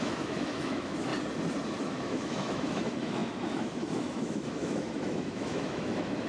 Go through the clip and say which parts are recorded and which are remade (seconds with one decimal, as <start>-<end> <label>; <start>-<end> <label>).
0.0-1.1 remade; 1.1-1.8 recorded; 1.8-6.3 remade